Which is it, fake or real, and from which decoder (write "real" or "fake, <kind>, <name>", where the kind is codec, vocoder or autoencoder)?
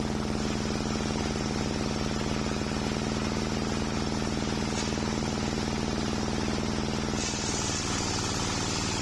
real